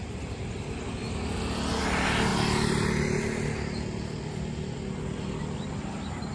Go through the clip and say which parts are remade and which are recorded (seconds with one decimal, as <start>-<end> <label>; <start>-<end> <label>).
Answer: 0.0-6.3 recorded